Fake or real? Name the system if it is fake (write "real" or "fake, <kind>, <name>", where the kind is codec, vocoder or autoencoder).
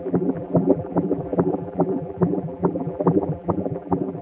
fake, vocoder, BigVGAN v2